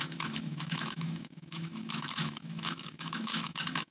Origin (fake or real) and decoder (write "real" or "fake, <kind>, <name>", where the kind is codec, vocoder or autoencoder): fake, autoencoder, DAC-VAE